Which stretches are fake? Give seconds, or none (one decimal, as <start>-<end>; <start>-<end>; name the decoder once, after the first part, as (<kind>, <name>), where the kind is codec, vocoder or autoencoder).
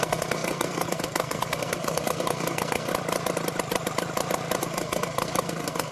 0.0-2.9 (codec, SNAC); 4.6-5.9